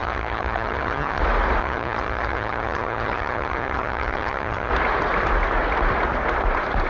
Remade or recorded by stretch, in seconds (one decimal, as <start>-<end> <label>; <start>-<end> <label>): 0.0-1.2 remade; 1.2-1.6 recorded; 1.6-4.7 remade; 4.7-6.9 recorded

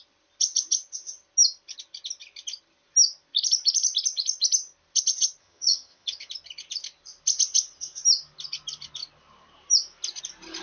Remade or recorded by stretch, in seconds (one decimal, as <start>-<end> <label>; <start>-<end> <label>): 0.0-5.4 recorded; 5.4-6.3 remade; 6.3-10.6 recorded

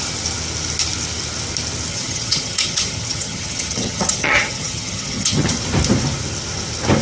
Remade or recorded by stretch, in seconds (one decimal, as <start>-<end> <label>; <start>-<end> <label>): 0.0-1.9 recorded; 1.9-5.5 remade; 5.5-7.0 recorded

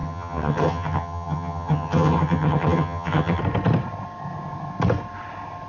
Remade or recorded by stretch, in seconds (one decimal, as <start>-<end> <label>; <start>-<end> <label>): 0.0-3.4 remade; 3.4-5.7 recorded